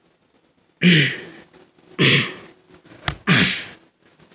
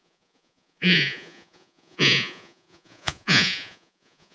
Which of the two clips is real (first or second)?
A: first